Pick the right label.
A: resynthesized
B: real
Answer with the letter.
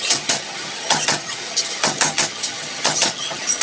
A